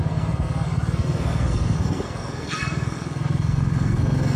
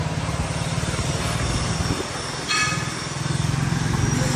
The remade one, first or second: first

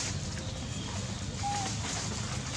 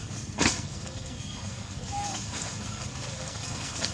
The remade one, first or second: second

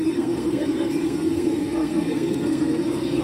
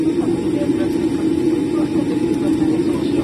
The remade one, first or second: first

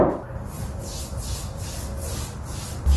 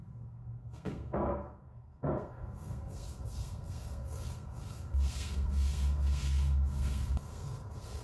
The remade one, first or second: second